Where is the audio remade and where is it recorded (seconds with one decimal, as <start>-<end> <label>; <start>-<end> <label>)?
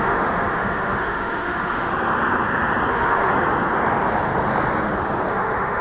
0.0-1.9 remade; 1.9-2.9 recorded; 2.9-3.3 remade; 3.3-5.3 recorded; 5.3-5.8 remade